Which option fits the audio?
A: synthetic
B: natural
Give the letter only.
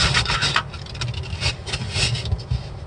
B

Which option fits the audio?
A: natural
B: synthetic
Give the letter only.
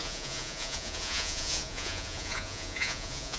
B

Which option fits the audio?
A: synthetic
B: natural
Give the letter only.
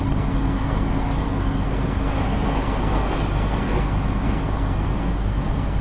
A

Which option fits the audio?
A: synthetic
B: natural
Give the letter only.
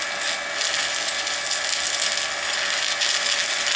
B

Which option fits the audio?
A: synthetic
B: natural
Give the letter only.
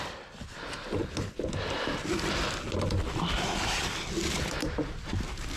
B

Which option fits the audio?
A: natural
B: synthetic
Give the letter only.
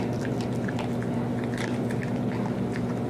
A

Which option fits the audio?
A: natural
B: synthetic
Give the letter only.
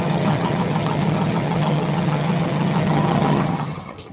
B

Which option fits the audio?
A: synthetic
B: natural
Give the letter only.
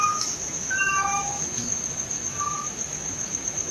A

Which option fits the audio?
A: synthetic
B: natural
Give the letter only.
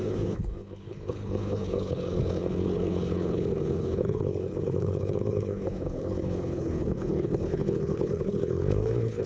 A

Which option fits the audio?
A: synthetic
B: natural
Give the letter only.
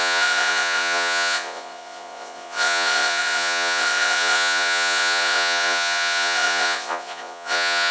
A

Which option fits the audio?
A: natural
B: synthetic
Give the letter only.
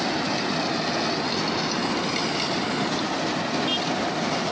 A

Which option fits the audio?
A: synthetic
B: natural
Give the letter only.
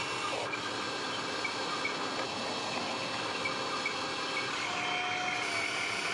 B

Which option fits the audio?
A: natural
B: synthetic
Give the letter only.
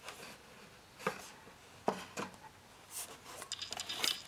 A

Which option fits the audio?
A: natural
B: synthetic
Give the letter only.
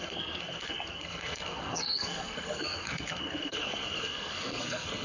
B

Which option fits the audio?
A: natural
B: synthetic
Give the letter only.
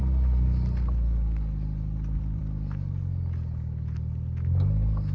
A